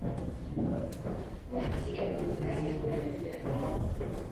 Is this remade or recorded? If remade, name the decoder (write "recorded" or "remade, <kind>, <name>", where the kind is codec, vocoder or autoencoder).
remade, codec, SNAC